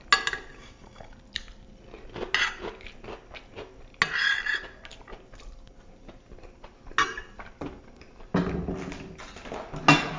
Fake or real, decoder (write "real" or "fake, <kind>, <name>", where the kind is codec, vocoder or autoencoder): real